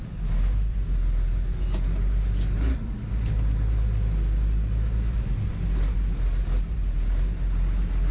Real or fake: real